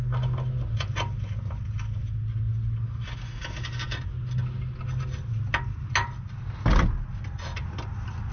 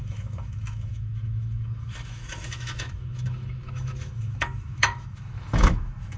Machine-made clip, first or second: second